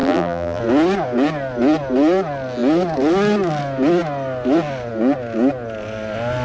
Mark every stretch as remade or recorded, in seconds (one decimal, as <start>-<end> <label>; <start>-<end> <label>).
0.0-0.6 remade; 0.6-6.4 recorded